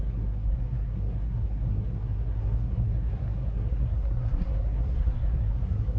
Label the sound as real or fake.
fake